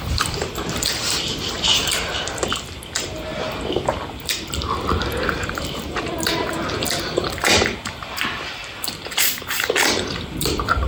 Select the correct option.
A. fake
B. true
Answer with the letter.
A